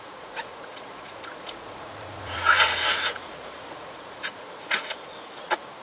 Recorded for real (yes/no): no